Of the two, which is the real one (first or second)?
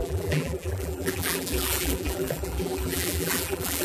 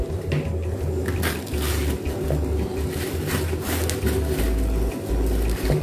second